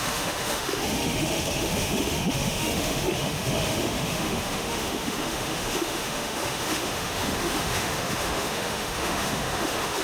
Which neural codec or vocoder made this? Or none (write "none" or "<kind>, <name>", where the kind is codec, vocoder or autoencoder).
autoencoder, DAC-VAE